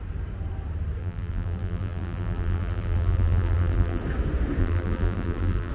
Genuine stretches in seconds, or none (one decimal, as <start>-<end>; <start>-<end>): 0.0-1.0; 4.0-4.6